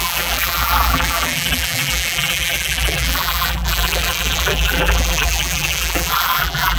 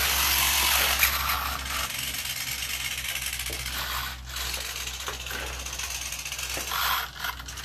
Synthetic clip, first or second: first